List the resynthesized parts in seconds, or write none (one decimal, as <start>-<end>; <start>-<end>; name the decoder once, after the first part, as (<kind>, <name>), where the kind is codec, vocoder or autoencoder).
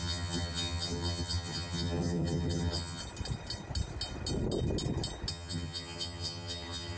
0.0-3.0 (vocoder, HiFi-GAN); 5.3-7.0